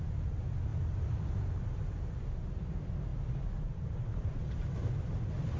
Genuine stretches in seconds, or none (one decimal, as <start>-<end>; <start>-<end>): 0.0-5.6